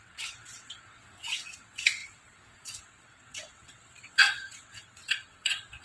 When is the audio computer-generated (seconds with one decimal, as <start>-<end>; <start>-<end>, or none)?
0.0-5.8